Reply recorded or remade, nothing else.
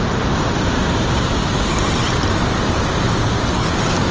remade